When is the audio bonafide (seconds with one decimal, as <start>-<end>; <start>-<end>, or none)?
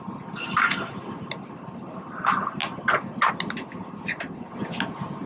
0.0-5.3